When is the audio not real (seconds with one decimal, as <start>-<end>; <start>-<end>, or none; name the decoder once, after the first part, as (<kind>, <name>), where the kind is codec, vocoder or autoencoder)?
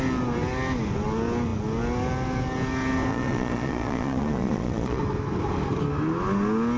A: 3.1-5.0 (vocoder, Vocos)